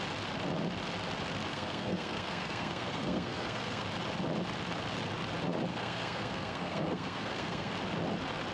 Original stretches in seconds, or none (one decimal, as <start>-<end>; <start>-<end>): 0.0-1.5; 3.8-5.7; 7.7-8.5